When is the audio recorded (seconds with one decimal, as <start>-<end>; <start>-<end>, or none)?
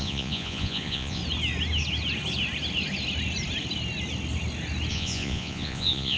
1.2-4.9